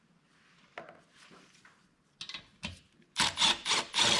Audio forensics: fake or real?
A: real